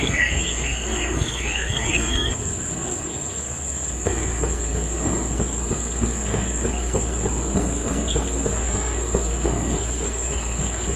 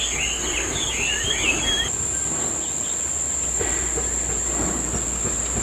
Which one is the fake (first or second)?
first